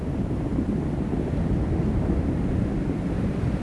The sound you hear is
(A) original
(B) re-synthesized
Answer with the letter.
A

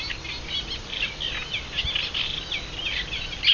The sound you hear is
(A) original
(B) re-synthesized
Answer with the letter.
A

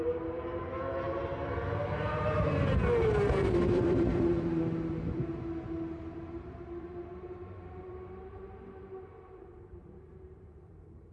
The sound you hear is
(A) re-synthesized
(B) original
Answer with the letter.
A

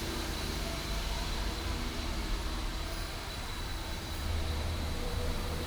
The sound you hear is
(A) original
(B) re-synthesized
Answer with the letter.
B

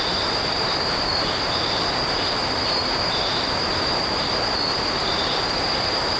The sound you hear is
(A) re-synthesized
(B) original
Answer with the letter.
A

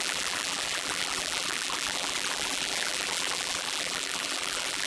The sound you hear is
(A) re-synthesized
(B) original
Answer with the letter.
A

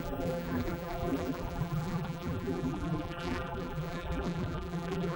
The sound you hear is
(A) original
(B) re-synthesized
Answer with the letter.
B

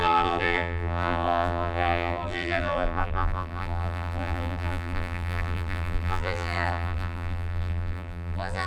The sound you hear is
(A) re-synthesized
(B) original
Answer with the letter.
A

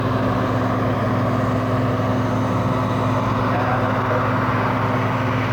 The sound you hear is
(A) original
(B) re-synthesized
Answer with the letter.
A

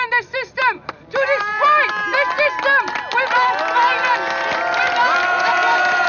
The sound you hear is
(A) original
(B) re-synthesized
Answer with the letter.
A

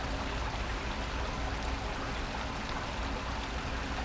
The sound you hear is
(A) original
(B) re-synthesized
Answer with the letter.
A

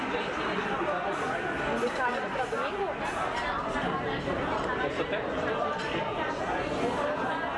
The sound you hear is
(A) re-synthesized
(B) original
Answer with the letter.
B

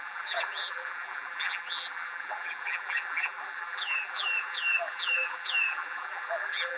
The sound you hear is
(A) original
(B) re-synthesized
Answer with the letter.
B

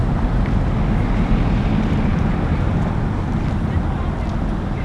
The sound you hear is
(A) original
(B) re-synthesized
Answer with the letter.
A